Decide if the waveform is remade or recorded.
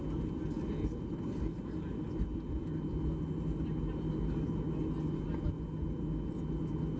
recorded